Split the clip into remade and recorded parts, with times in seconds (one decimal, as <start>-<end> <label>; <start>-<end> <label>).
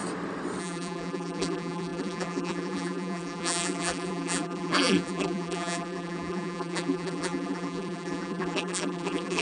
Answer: 0.0-0.6 recorded; 0.6-9.4 remade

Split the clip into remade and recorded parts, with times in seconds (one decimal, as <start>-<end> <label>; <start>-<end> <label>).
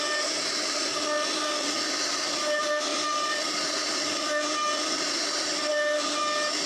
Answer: 0.0-2.9 recorded; 2.9-4.3 remade; 4.3-6.7 recorded